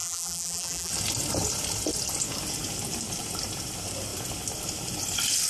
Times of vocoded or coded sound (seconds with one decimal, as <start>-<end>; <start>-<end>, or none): 0.0-0.9